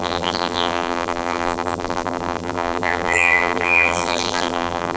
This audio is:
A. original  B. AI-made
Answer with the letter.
B